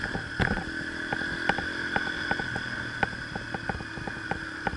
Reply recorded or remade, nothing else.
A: recorded